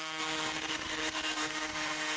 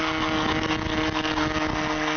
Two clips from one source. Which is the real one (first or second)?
second